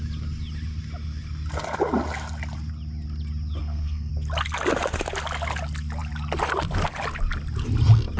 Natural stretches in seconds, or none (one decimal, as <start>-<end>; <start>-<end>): 0.0-3.6; 4.1-8.2